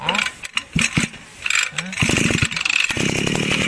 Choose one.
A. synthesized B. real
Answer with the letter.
B